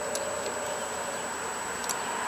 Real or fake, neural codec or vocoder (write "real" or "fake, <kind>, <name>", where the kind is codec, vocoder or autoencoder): real